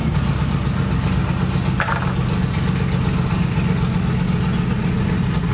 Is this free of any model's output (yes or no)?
yes